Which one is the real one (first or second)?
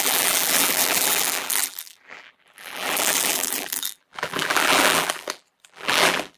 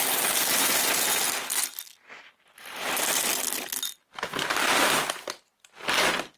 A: second